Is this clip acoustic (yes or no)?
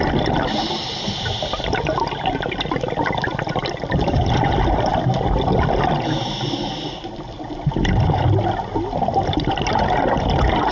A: yes